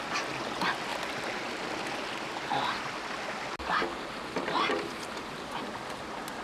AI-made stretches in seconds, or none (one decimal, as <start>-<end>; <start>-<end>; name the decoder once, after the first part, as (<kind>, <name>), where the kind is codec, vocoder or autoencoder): none